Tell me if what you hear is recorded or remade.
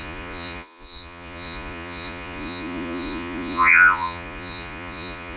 remade